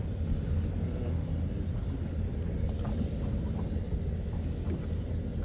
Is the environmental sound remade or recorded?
recorded